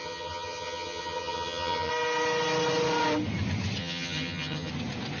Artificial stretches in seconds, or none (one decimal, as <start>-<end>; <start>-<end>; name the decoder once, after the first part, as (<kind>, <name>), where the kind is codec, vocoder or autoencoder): 0.0-1.9 (vocoder, HiFi-GAN); 3.8-4.7